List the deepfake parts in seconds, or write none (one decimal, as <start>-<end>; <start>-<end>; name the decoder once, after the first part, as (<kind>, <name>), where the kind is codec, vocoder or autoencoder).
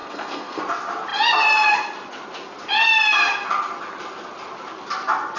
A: 0.0-0.6 (codec, SNAC)